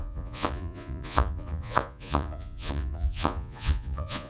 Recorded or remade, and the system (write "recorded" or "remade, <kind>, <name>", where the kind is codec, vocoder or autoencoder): remade, vocoder, Vocos